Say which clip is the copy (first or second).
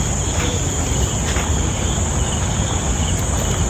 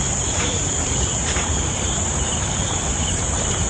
second